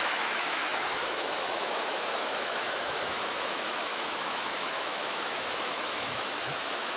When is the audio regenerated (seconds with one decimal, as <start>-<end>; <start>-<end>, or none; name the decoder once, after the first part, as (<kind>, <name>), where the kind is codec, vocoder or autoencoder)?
0.0-7.0 (autoencoder, DAC-VAE)